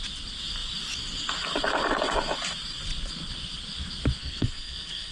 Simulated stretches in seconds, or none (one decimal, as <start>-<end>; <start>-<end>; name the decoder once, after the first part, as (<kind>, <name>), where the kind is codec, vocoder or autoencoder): 4.2-5.1 (codec, SNAC)